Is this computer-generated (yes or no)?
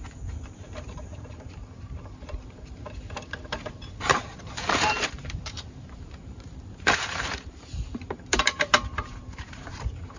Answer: yes